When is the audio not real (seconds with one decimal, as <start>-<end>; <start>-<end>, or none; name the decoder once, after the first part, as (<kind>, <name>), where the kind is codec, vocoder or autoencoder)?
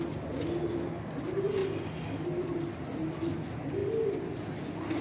none